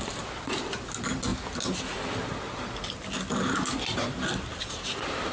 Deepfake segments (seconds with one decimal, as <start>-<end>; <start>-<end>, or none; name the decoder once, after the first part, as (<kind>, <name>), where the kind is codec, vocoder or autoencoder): none